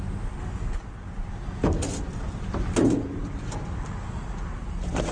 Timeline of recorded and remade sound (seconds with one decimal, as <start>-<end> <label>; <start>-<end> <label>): 0.0-5.1 recorded